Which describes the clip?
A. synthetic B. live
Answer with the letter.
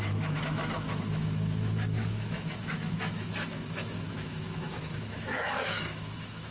A